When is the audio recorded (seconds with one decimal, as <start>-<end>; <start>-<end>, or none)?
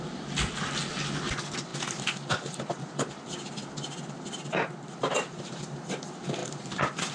0.0-6.4